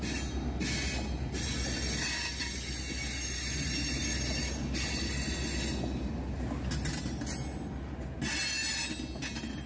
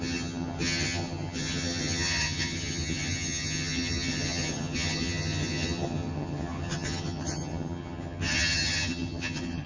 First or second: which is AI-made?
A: second